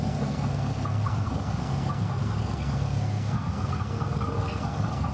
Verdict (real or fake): fake